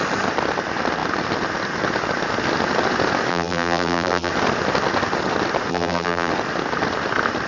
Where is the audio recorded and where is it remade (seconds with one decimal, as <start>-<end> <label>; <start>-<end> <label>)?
0.0-3.3 recorded; 3.3-4.3 remade; 4.3-5.7 recorded; 5.7-6.3 remade; 6.3-7.5 recorded